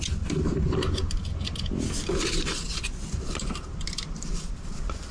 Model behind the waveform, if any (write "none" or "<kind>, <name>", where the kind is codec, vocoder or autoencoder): none